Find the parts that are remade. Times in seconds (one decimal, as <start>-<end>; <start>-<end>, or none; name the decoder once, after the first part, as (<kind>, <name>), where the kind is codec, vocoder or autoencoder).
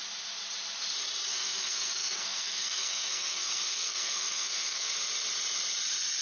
1.3-4.9 (codec, SNAC)